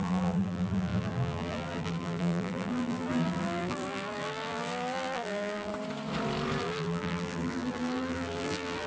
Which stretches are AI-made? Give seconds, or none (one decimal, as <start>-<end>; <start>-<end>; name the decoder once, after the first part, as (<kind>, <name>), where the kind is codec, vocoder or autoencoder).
0.0-5.7 (vocoder, BigVGAN v2); 6.6-8.9